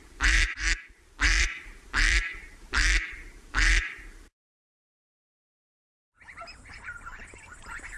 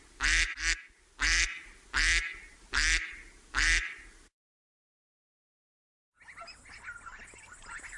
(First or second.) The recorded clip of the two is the second